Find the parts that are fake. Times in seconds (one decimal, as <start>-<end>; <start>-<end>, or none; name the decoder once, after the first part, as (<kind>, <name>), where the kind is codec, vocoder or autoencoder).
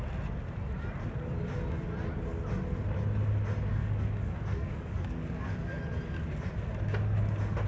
3.8-5.8 (codec, DAC)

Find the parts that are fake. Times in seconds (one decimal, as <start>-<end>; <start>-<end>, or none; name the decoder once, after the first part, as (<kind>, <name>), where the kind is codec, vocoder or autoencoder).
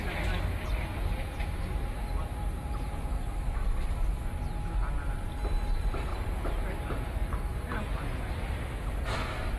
none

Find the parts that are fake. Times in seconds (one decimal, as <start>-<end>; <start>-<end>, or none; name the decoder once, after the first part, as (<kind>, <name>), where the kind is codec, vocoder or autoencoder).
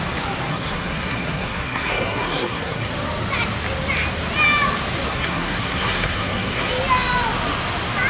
0.5-2.9 (codec, SNAC); 5.1-6.7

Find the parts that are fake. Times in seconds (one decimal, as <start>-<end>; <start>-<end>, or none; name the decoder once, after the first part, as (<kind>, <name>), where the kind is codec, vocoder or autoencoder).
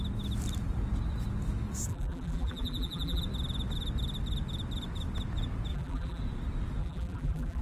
1.9-3.2 (vocoder, BigVGAN v2); 5.7-6.2; 6.8-7.6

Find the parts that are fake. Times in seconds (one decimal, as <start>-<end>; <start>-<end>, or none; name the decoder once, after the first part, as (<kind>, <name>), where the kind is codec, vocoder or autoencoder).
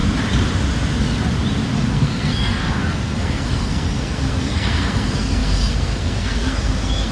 1.9-7.1 (codec, SNAC)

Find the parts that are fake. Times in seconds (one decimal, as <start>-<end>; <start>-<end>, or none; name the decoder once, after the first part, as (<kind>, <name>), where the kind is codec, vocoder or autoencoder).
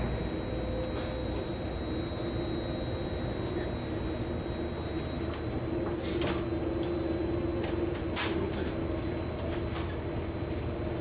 1.2-1.7 (vocoder, BigVGAN v2)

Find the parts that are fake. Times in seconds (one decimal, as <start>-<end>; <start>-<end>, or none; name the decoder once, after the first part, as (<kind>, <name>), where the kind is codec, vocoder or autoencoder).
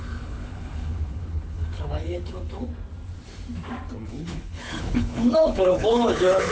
0.0-2.7 (codec, HILCodec); 4.1-6.5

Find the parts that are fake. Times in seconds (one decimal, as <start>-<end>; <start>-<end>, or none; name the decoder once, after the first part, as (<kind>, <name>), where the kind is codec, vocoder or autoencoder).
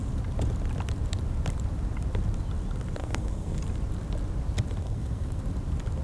3.0-3.6 (codec, SNAC); 4.8-5.4